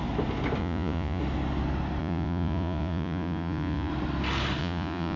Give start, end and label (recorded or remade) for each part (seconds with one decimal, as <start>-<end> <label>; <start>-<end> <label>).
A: 0.0-0.6 recorded; 0.6-1.2 remade; 1.2-2.0 recorded; 2.0-3.9 remade; 3.9-4.6 recorded; 4.6-5.2 remade